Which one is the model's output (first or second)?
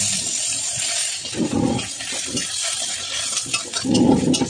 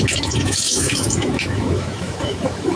second